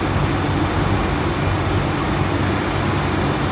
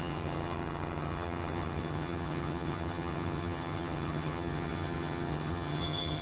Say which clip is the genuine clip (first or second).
first